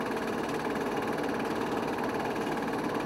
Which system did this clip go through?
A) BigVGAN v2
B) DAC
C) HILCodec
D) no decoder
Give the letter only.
D